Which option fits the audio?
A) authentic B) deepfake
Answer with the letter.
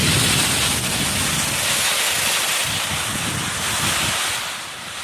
A